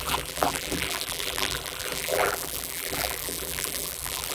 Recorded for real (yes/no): no